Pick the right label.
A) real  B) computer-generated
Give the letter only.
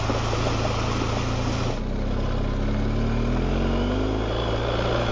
A